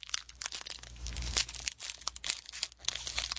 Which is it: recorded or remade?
recorded